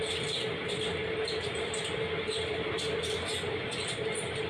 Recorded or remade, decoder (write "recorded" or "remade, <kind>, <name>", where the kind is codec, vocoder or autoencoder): recorded